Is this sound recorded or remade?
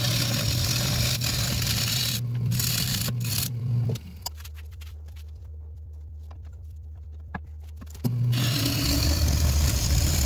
remade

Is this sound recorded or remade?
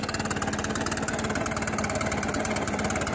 recorded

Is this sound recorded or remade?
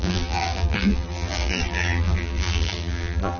remade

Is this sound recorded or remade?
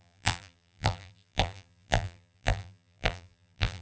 remade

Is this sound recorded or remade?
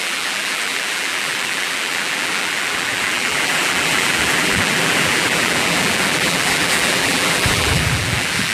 remade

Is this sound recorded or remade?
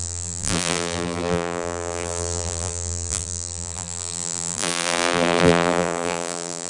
remade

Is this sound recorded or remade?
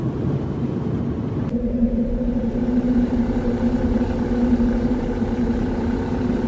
remade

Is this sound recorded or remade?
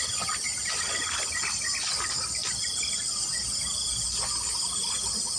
recorded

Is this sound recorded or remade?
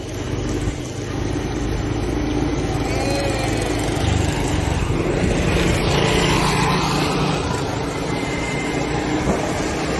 recorded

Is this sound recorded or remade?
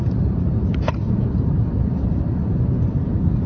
remade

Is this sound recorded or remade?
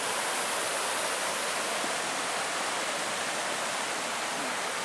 recorded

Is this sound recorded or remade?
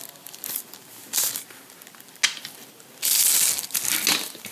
recorded